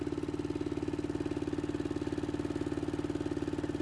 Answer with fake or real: real